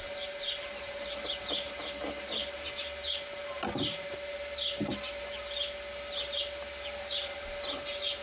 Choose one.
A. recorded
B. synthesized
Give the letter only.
A